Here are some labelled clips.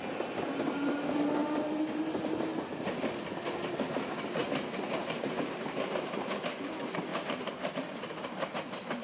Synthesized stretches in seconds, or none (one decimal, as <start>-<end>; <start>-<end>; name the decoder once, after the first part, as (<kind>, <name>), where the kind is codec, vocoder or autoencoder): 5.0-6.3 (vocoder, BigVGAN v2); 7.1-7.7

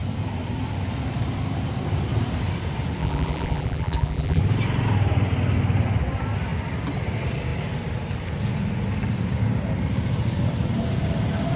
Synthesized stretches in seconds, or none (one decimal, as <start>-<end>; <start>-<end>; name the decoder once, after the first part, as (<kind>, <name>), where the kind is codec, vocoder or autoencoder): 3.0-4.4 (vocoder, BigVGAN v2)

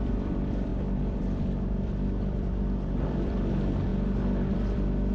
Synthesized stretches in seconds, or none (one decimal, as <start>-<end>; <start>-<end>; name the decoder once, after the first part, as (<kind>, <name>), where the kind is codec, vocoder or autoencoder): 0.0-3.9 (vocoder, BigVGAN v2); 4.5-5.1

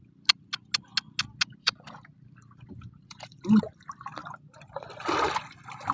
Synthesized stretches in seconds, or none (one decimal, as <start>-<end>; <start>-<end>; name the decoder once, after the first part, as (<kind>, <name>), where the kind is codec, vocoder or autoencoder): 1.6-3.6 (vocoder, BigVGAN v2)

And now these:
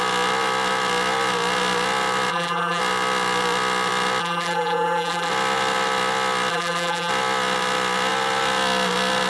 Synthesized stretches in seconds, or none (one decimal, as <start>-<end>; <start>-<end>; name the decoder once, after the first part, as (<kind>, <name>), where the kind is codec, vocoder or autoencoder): 2.3-2.8 (vocoder, BigVGAN v2); 4.2-5.3; 6.5-7.1

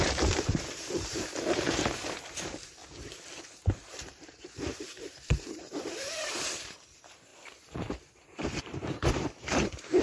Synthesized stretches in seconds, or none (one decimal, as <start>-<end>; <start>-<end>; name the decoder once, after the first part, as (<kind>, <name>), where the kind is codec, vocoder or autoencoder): 0.0-2.8 (vocoder, BigVGAN v2); 3.4-7.3; 8.6-10.0

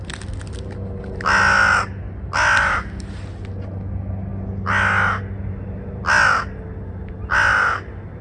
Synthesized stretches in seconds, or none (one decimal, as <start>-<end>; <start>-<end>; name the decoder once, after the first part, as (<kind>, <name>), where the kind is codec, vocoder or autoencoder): none

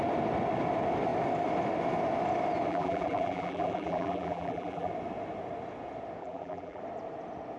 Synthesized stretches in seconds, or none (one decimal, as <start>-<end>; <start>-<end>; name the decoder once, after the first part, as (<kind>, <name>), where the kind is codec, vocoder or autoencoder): 2.7-4.9 (vocoder, BigVGAN v2); 6.2-6.8